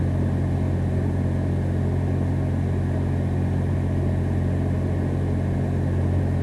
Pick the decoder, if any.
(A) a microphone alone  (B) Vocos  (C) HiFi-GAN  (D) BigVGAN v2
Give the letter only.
A